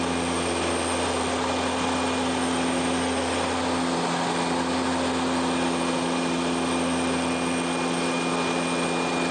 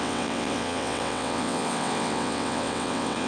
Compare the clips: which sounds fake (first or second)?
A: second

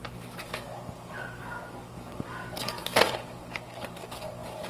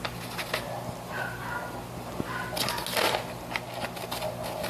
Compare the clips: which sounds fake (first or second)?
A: first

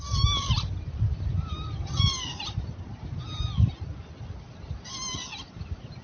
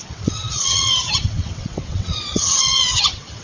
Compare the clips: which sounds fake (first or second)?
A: second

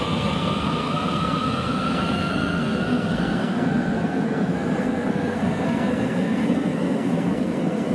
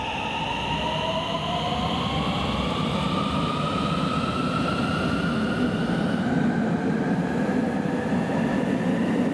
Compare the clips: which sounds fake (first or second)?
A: first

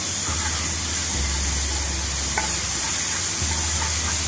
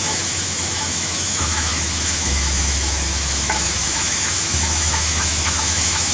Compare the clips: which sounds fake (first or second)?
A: second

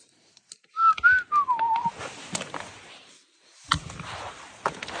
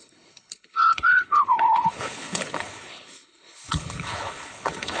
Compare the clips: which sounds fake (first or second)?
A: second